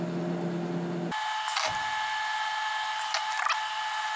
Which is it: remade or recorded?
recorded